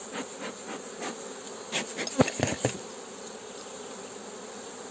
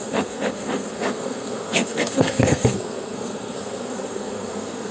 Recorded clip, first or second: first